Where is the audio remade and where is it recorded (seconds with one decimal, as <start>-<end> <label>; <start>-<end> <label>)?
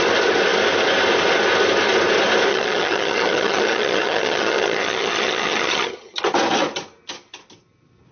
0.0-2.5 recorded; 2.5-6.2 remade; 6.2-8.1 recorded